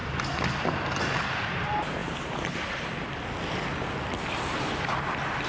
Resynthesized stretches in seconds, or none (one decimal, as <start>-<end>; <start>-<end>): none